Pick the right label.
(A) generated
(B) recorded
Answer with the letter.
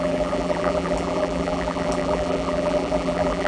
A